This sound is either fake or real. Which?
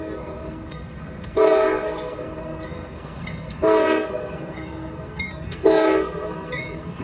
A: fake